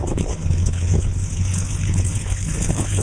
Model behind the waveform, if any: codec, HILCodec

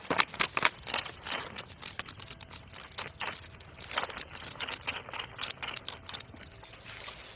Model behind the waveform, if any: none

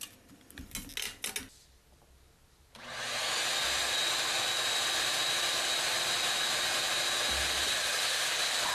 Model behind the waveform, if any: none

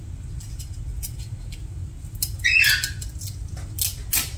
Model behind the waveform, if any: none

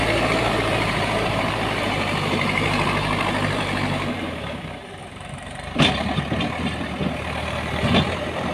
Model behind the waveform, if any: vocoder, BigVGAN v2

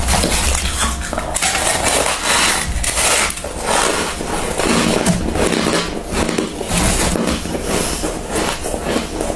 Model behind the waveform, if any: none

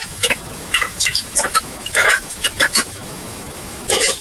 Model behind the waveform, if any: autoencoder, DAC-VAE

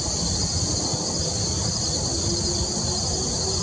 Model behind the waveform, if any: none